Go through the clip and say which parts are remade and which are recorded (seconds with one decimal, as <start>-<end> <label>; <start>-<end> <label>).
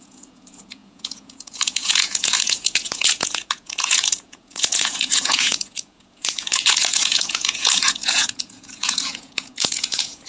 0.0-10.3 remade